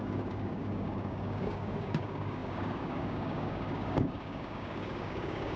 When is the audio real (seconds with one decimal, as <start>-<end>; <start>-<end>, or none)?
none